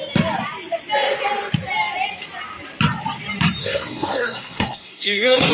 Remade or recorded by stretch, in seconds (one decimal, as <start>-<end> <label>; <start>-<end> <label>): 0.0-3.6 recorded; 3.6-5.5 remade